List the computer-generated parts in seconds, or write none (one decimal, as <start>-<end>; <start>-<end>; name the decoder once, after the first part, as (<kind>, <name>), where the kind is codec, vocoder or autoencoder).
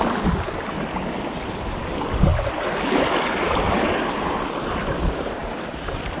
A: none